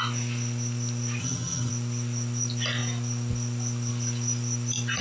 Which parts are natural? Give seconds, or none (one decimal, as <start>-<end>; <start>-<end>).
0.0-1.2; 1.7-5.0